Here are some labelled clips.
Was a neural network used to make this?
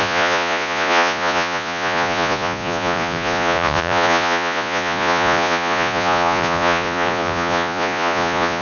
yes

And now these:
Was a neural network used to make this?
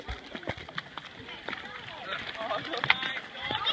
no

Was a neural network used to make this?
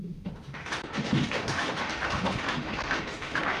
yes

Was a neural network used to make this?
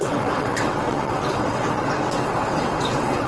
yes